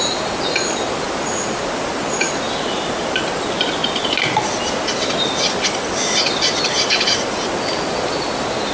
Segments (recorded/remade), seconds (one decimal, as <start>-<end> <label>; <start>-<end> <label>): 0.0-8.7 recorded